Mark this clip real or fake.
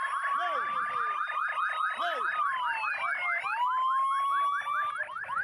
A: real